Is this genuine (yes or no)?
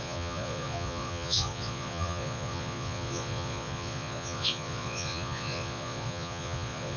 no